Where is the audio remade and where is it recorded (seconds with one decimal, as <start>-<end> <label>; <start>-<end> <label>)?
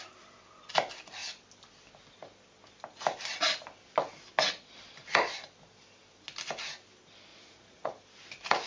0.0-7.3 recorded; 7.3-8.0 remade; 8.0-8.7 recorded